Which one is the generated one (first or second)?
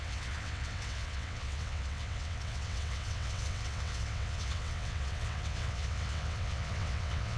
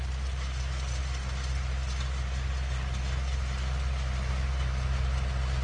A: first